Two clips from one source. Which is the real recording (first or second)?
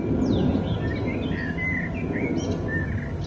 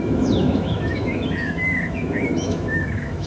first